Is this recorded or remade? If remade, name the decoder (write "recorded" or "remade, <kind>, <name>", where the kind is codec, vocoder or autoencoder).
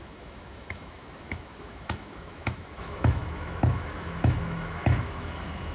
remade, autoencoder, DAC-VAE